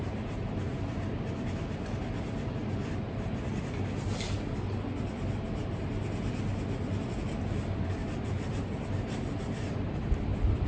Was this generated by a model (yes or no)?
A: no